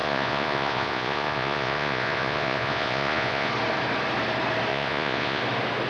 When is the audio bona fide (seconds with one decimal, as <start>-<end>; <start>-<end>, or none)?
3.5-4.7; 5.4-5.9